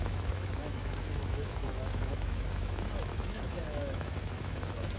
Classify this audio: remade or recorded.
remade